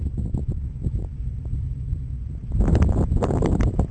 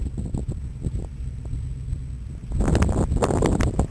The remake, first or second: first